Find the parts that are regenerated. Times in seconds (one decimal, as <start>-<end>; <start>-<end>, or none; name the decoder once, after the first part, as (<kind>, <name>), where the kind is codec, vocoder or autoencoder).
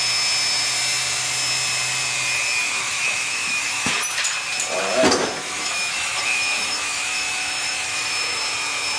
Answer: 2.6-3.9 (autoencoder, DAC-VAE); 5.4-8.4